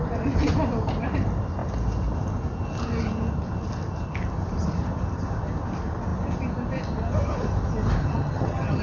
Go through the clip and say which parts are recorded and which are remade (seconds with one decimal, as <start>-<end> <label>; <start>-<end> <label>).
0.0-8.0 recorded; 8.0-8.8 remade